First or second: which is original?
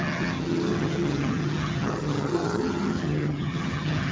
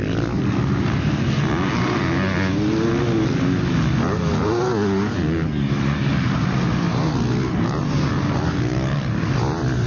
second